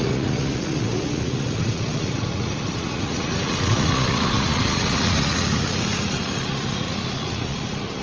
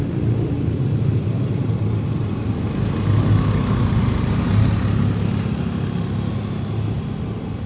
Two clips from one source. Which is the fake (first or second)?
first